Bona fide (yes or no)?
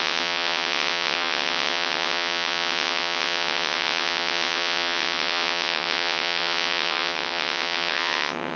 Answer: no